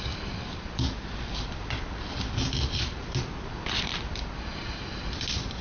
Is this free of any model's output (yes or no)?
yes